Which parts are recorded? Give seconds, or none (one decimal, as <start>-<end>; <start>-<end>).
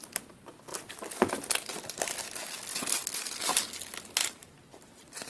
0.0-2.7; 3.4-5.3